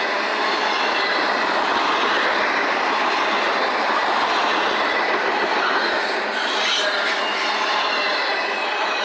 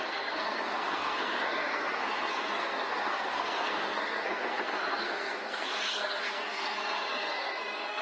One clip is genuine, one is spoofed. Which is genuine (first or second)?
first